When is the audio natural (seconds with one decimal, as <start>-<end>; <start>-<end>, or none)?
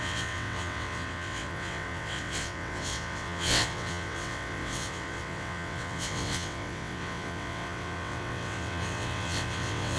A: none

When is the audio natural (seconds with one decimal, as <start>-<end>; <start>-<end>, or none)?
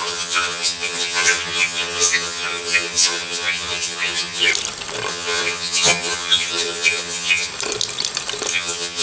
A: 4.5-5.1; 7.5-8.5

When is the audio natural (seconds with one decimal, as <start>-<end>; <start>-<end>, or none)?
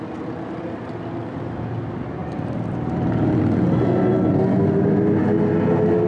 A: 0.0-2.2; 3.4-6.1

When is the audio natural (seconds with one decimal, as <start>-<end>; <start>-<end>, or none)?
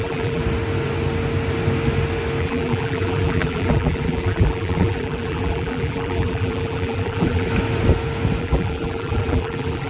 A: 0.4-2.4; 7.5-8.4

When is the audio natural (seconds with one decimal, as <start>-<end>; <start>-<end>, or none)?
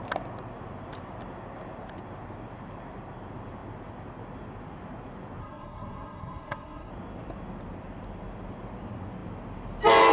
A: 0.0-5.4; 6.9-10.1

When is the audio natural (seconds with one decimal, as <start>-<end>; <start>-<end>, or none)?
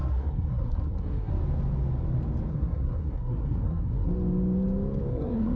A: 1.3-2.5; 4.1-5.1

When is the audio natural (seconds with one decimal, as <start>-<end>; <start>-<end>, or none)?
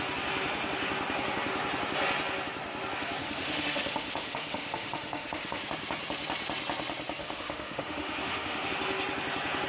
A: 0.0-3.2; 5.6-7.2; 8.7-9.7